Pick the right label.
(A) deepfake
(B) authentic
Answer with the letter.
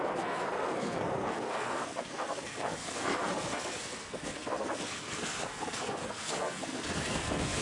A